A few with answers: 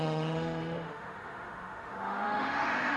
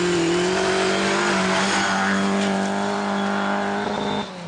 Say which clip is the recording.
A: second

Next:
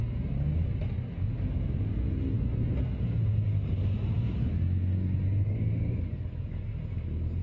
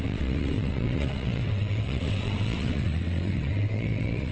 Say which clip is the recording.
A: first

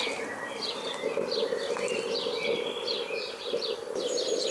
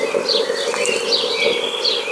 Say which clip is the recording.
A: second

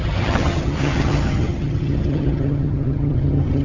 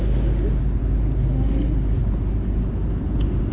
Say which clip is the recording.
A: second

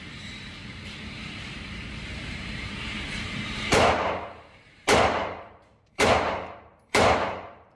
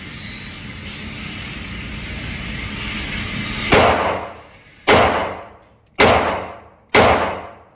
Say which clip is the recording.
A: second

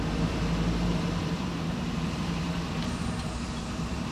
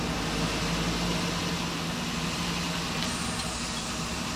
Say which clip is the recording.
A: second